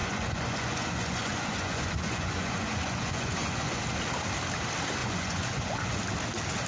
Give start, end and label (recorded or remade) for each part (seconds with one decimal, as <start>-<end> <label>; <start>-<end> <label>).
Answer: 0.0-3.8 remade; 3.8-5.0 recorded; 5.0-6.0 remade; 6.0-6.7 recorded